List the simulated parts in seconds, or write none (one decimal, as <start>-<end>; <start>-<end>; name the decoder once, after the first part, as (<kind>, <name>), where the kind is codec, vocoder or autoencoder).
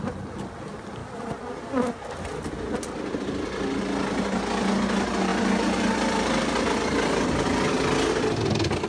none